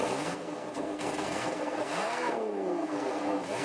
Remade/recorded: remade